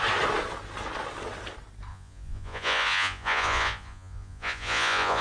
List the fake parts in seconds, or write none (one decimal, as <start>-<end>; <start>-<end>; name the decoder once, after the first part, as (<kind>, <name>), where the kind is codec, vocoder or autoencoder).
1.9-5.2 (vocoder, Vocos)